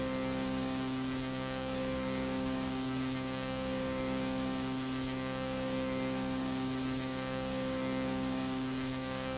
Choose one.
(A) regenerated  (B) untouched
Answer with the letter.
A